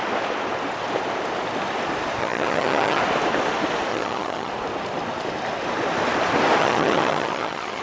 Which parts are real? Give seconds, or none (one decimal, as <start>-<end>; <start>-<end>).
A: 0.0-2.2; 3.0-3.9; 4.5-6.6